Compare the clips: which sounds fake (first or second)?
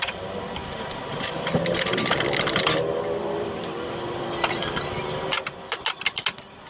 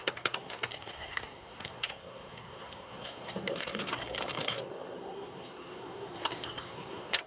second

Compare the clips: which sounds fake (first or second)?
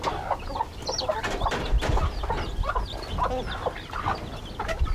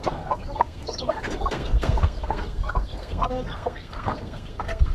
second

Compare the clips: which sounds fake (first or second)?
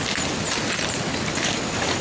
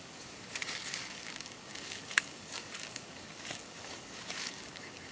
second